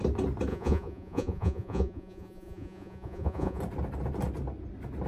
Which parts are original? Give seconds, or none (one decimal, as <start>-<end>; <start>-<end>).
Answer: 0.0-0.5; 3.6-5.1